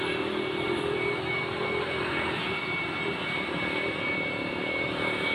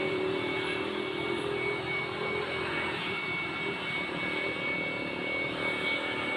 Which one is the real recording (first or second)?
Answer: second